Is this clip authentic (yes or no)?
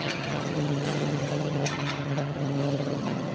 no